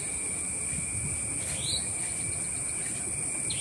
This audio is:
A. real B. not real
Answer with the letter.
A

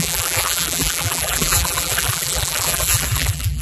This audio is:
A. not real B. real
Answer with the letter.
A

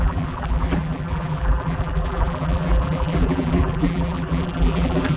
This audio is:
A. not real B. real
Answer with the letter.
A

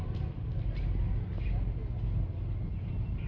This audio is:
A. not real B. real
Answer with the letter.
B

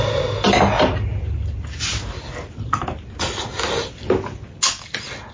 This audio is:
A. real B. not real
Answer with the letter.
A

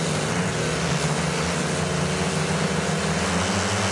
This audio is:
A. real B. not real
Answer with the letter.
A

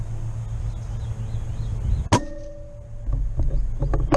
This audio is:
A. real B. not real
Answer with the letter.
A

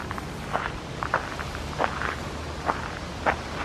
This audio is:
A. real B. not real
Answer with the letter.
A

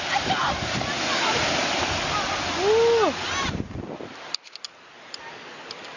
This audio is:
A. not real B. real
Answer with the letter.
B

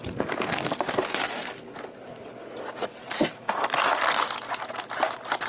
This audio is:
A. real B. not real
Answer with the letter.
A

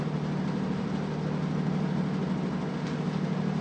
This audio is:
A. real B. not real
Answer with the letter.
A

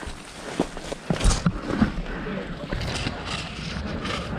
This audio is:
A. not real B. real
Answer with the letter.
B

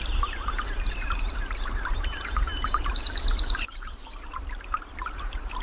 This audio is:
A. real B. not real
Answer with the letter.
B